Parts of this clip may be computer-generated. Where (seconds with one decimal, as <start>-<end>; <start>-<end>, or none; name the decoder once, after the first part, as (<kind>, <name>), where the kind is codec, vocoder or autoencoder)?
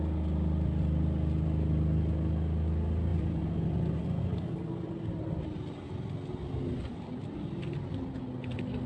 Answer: none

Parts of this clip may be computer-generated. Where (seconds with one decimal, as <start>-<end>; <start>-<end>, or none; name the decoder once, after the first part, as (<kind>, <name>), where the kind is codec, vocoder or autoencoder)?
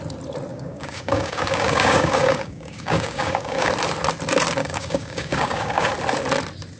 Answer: 0.5-3.7 (codec, DAC); 4.6-5.9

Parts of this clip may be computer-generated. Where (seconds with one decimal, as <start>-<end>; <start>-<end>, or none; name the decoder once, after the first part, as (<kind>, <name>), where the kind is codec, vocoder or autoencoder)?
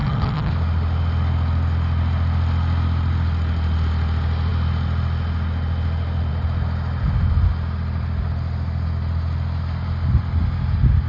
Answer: 0.0-0.5 (vocoder, HiFi-GAN)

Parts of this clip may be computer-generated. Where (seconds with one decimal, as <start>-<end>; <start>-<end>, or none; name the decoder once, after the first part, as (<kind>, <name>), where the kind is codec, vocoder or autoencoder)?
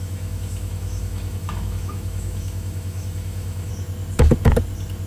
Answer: 0.0-3.7 (autoencoder, DAC-VAE)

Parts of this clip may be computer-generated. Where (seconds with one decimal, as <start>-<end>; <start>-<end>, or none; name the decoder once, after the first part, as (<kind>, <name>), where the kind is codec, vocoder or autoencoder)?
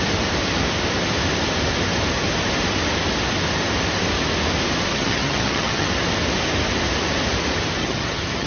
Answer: 4.9-5.9 (vocoder, HiFi-GAN); 7.8-8.5